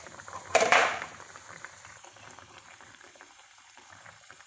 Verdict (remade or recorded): remade